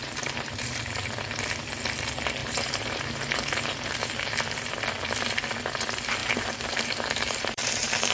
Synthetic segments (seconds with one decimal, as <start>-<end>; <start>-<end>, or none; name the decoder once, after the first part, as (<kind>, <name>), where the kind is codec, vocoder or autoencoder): 0.0-0.8 (vocoder, BigVGAN v2); 2.4-3.0; 6.2-8.1